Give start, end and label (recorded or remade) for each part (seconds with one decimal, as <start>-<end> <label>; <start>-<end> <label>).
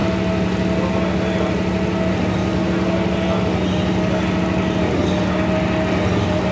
0.0-6.5 recorded